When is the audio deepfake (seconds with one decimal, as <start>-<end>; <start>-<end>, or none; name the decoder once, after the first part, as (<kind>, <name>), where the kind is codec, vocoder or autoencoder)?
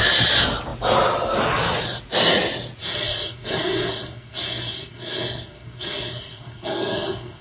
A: 2.8-7.4 (codec, SNAC)